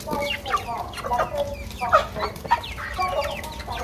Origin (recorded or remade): recorded